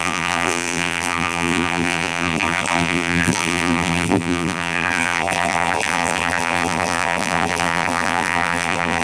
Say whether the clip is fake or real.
fake